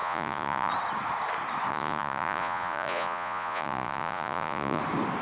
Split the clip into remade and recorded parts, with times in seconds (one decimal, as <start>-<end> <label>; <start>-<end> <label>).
0.0-0.7 remade; 0.7-1.7 recorded; 1.7-4.8 remade; 4.8-5.2 recorded